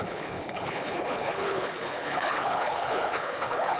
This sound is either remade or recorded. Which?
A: remade